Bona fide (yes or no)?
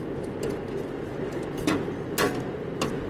yes